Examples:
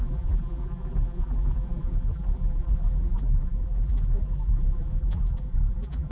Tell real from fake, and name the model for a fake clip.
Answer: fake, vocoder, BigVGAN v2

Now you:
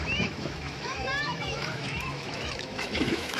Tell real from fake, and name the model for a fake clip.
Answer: fake, autoencoder, DAC-VAE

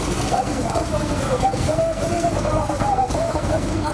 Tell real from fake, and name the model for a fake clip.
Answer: fake, codec, SNAC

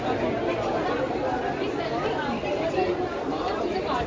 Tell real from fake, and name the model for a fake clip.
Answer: fake, vocoder, BigVGAN v2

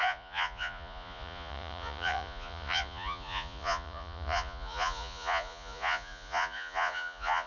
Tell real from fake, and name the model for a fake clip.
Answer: fake, vocoder, Vocos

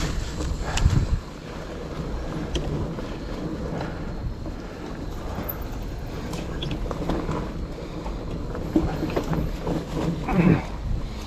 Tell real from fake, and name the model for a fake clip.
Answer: real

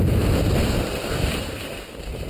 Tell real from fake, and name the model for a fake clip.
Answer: fake, vocoder, BigVGAN v2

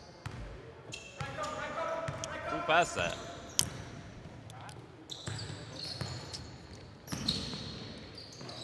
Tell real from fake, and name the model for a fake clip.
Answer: real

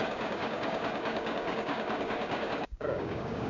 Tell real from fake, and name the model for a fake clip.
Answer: fake, codec, DAC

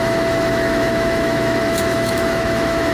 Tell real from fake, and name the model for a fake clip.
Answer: fake, autoencoder, DAC-VAE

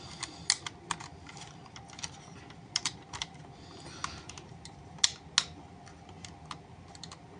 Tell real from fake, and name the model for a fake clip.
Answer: real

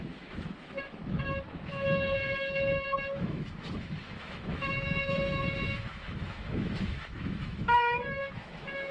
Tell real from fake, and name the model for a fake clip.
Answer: fake, autoencoder, DAC-VAE